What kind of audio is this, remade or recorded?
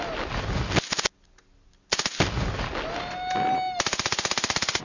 recorded